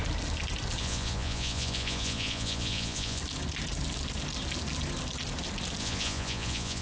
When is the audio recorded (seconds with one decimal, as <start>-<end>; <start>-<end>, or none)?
0.0-0.8; 3.2-5.8